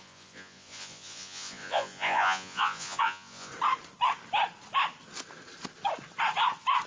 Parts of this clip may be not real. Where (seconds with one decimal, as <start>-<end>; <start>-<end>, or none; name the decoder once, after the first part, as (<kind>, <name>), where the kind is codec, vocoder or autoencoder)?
0.0-3.5 (vocoder, Vocos)